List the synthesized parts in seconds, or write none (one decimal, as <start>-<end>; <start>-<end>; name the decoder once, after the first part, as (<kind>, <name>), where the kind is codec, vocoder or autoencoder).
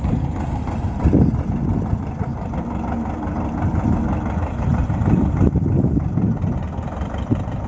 none